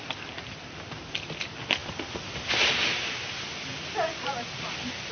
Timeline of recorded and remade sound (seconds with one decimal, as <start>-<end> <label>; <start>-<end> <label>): 0.0-5.1 recorded